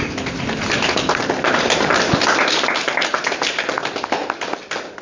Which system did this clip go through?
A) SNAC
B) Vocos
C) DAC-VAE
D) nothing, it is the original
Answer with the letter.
D